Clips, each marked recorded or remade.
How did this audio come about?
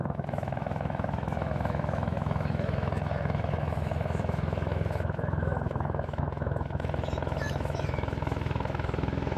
remade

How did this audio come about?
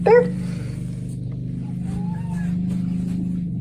recorded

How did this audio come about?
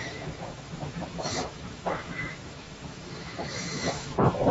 remade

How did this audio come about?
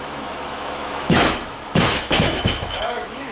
remade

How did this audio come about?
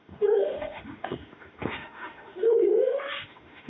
remade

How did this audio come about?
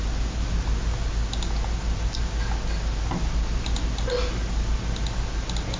recorded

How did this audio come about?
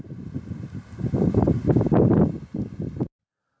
recorded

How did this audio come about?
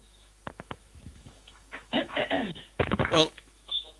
remade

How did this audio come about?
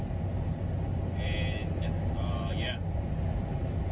recorded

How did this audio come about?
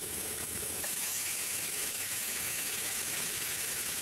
remade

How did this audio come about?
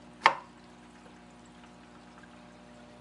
recorded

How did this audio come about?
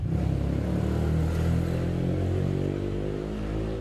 recorded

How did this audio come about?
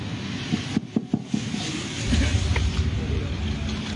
recorded